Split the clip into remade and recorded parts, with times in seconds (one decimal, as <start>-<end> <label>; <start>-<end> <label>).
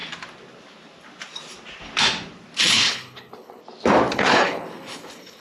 0.0-2.6 recorded; 2.6-3.6 remade; 3.6-4.1 recorded; 4.1-5.4 remade